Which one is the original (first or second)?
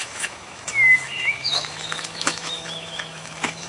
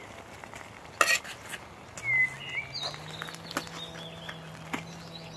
second